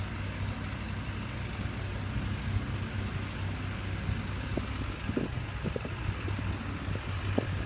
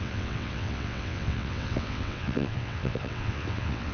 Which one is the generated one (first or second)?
second